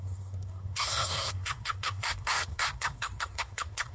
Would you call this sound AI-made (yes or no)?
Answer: yes